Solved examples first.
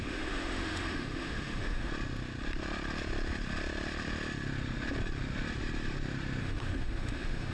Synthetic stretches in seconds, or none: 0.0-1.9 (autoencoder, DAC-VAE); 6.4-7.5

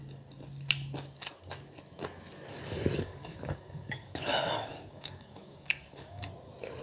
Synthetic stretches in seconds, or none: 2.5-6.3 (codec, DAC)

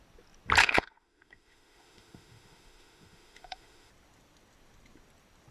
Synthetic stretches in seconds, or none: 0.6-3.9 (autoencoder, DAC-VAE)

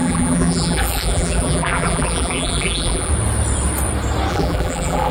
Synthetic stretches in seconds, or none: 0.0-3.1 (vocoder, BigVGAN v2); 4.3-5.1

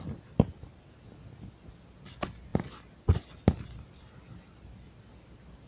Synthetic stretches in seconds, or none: none